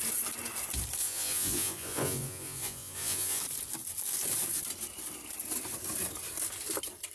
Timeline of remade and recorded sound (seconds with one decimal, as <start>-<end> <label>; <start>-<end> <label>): 0.0-1.0 recorded; 1.0-3.4 remade; 3.4-7.1 recorded